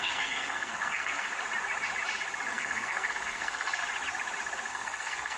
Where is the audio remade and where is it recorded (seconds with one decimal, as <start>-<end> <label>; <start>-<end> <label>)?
0.0-1.3 remade; 1.3-2.5 recorded; 2.5-3.8 remade; 3.8-4.7 recorded; 4.7-5.4 remade